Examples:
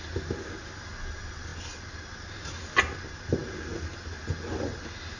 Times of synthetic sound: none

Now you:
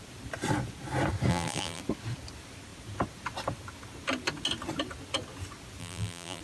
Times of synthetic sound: 1.3-1.8; 5.8-6.4

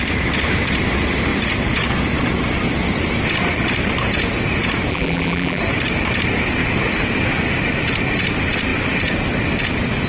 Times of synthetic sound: 4.9-5.6

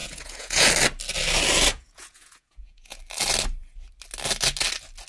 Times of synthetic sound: 0.0-0.7; 1.7-3.0

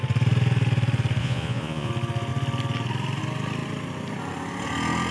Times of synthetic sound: 1.2-1.9

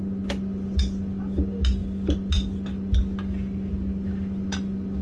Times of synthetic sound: none

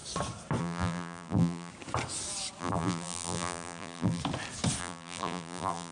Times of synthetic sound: 0.6-1.7; 2.6-4.2; 4.8-5.9

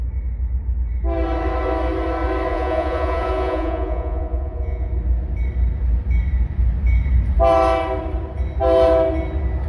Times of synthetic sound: 2.5-4.9